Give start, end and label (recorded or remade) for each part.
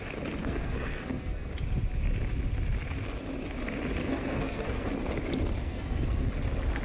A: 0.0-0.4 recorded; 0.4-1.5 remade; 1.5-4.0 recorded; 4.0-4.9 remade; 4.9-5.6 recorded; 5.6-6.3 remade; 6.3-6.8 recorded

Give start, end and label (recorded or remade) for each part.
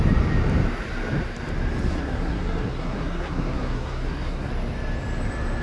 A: 0.0-1.9 recorded; 1.9-4.5 remade; 4.5-5.6 recorded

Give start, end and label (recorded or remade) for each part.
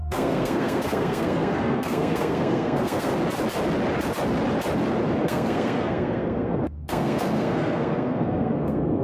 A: 0.0-3.1 remade; 3.1-5.2 recorded; 5.2-9.0 remade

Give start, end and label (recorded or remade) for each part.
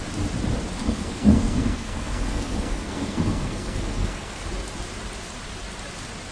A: 0.0-0.8 recorded; 0.8-4.5 remade; 4.5-6.3 recorded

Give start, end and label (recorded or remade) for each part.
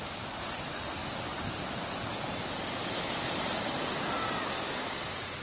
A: 0.0-5.4 recorded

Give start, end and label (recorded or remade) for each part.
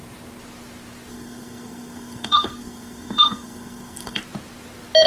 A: 0.0-1.1 recorded; 1.1-4.2 remade; 4.2-5.1 recorded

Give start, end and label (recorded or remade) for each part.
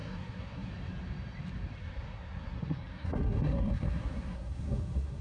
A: 0.0-0.7 remade; 0.7-1.8 recorded; 1.8-5.2 remade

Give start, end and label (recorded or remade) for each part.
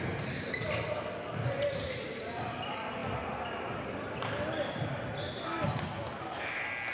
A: 0.0-6.9 recorded